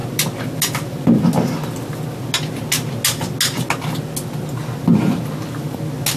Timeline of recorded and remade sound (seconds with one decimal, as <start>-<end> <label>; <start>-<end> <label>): 0.0-6.2 recorded